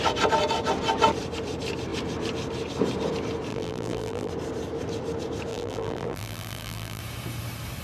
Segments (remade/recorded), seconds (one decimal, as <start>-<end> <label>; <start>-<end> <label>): 0.0-3.5 recorded; 3.5-4.3 remade; 4.3-5.5 recorded; 5.5-7.0 remade; 7.0-7.8 recorded